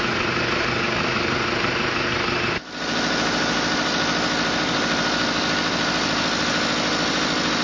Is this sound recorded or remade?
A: recorded